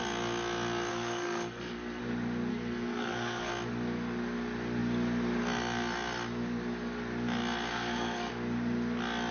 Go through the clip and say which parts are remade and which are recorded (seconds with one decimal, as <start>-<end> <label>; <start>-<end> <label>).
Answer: 0.0-0.9 recorded; 0.9-2.0 remade; 2.0-2.5 recorded; 2.5-3.5 remade; 3.5-7.7 recorded; 7.7-8.3 remade; 8.3-9.3 recorded